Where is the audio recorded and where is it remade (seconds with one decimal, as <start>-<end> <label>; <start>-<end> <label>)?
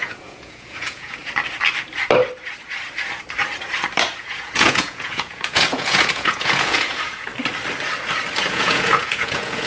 0.0-1.2 remade; 1.2-4.2 recorded; 4.2-7.3 remade; 7.3-8.5 recorded; 8.5-9.7 remade